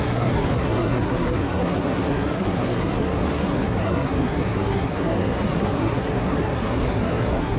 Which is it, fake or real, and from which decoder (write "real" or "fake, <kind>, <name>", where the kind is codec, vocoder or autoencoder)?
fake, codec, SNAC